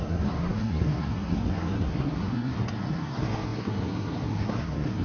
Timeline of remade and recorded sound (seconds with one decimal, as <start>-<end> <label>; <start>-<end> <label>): 0.0-5.0 remade